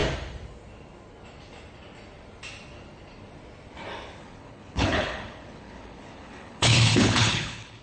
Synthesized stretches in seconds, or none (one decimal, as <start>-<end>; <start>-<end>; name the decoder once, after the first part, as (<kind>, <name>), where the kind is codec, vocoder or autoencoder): 4.2-7.8 (codec, HILCodec)